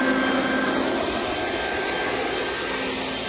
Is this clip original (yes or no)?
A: yes